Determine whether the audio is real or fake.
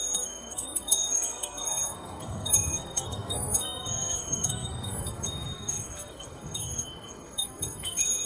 fake